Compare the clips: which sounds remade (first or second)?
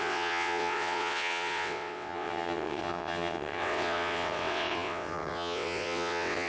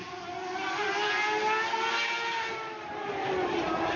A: first